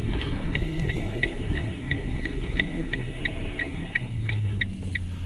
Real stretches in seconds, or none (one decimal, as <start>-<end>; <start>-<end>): 3.2-3.6; 4.6-5.3